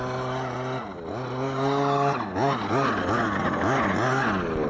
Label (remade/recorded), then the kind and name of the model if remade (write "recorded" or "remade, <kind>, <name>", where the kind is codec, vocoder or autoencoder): recorded